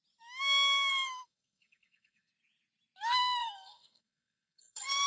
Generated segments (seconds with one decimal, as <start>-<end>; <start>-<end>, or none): 0.9-2.3; 3.4-5.1